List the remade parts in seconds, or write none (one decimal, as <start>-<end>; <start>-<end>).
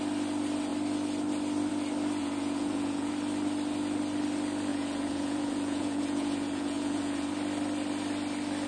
2.2-3.1; 4.7-7.3